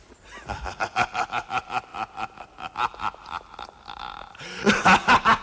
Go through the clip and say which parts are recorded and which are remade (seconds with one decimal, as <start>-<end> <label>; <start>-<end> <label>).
0.0-4.0 recorded; 4.0-4.6 remade; 4.6-5.4 recorded